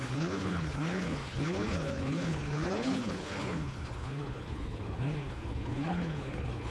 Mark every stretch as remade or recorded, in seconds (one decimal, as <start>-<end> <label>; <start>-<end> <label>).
0.0-6.7 remade